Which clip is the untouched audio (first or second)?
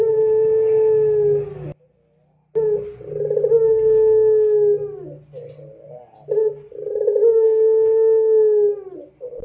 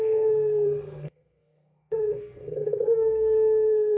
first